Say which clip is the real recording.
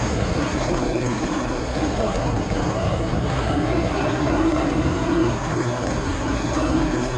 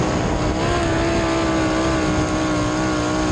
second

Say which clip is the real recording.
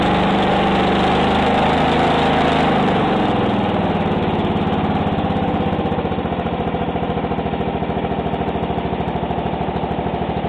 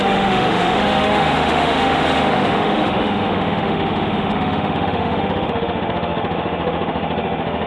first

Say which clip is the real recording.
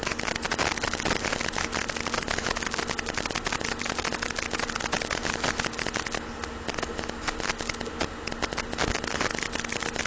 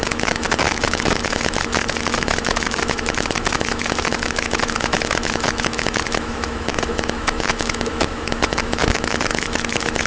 first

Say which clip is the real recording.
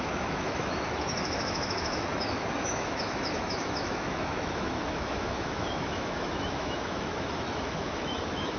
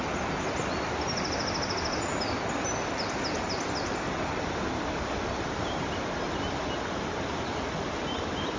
second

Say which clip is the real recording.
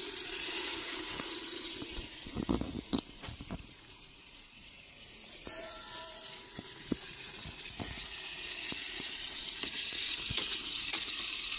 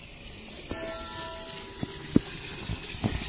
second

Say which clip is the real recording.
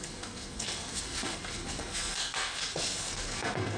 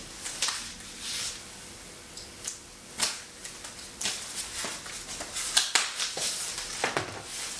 second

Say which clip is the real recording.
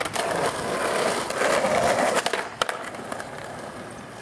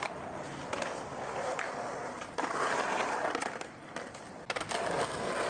second